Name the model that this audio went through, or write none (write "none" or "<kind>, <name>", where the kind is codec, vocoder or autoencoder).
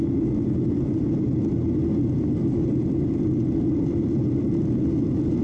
none